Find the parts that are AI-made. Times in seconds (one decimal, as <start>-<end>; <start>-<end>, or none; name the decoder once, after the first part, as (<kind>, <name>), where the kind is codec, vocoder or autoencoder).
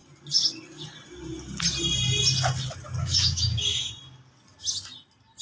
3.0-3.9 (codec, DAC)